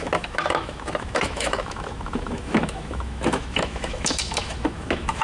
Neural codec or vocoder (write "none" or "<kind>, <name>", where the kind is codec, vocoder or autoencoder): autoencoder, DAC-VAE